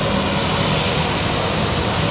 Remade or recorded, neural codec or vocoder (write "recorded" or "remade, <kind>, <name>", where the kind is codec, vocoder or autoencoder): recorded